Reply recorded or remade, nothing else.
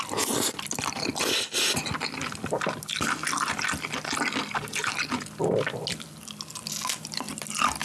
recorded